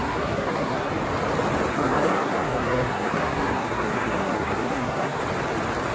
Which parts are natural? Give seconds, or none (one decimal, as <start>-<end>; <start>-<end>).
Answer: 0.9-1.7; 5.2-5.9